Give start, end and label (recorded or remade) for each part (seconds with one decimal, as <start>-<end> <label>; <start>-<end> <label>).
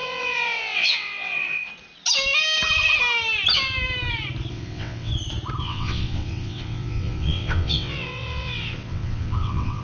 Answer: 0.0-1.7 remade; 1.7-4.5 recorded; 4.5-5.1 remade; 5.1-5.6 recorded; 5.6-9.8 remade